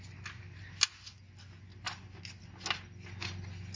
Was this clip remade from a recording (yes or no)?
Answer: no